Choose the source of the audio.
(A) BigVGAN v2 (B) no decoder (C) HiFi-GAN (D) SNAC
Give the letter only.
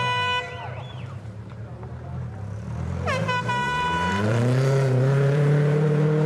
A